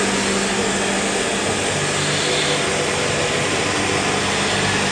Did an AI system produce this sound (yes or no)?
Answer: no